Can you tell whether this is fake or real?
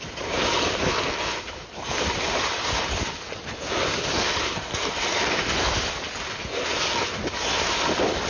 real